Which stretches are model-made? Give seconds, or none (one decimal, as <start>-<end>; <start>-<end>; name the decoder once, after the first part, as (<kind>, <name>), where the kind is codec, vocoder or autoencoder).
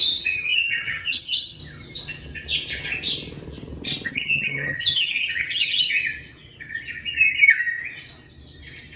0.0-1.6 (vocoder, HiFi-GAN); 4.1-6.0